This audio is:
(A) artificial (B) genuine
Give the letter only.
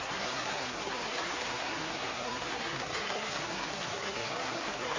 A